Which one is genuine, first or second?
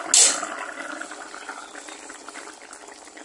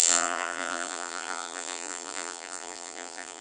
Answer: first